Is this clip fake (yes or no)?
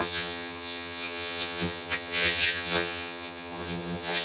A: yes